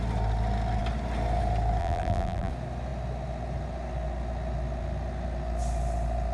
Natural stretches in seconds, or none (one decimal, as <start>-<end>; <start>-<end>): 0.0-1.8; 2.5-6.3